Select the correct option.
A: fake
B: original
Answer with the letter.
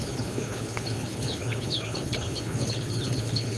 A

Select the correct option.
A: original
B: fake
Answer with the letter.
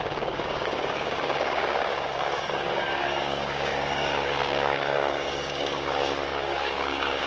B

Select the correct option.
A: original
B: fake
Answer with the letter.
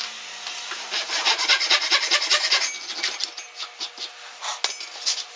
A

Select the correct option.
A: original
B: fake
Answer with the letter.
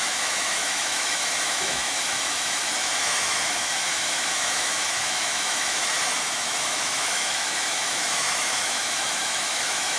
B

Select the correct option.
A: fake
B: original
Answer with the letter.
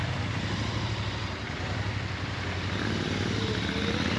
B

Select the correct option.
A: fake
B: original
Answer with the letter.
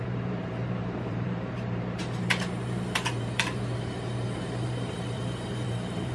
A